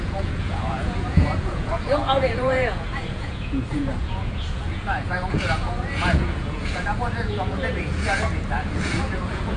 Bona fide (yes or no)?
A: no